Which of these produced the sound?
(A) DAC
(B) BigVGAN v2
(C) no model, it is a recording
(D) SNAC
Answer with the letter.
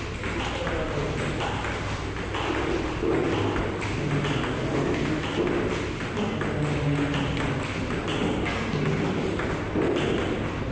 C